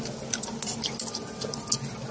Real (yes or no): yes